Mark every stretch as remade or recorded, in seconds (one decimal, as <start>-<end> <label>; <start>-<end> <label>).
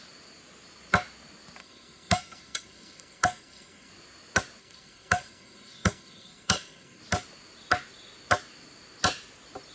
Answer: 0.0-1.6 recorded; 1.6-3.9 remade; 3.9-4.6 recorded; 4.6-7.0 remade; 7.0-9.7 recorded